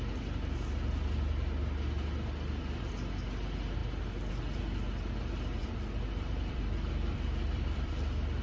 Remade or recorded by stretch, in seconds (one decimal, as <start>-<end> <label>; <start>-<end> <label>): 0.0-5.6 recorded; 5.6-7.9 remade; 7.9-8.4 recorded